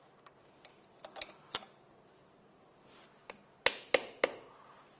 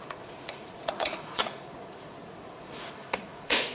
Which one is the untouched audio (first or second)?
first